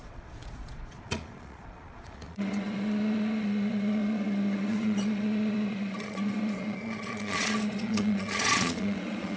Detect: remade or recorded remade